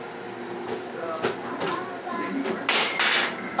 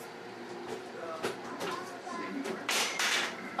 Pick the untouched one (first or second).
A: first